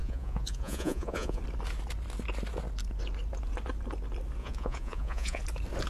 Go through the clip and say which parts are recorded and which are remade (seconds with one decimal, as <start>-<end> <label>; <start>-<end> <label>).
0.0-1.4 remade; 1.4-4.4 recorded; 4.4-5.4 remade; 5.4-5.9 recorded